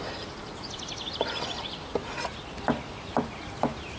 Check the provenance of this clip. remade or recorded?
recorded